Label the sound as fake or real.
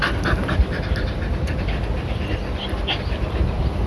real